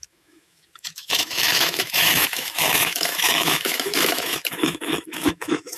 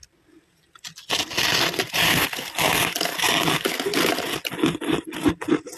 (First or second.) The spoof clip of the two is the first